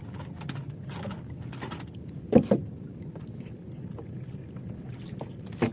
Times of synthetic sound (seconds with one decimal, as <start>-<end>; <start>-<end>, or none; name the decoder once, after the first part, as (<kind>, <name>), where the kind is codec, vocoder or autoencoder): none